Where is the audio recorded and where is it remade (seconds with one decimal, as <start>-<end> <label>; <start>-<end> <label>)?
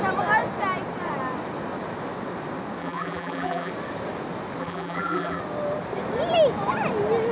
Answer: 0.0-2.8 recorded; 2.8-3.7 remade; 3.7-4.6 recorded; 4.6-5.4 remade; 5.4-7.3 recorded